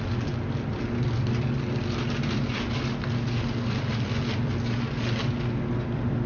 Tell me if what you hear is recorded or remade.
recorded